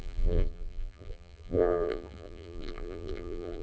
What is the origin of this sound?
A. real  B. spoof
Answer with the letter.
B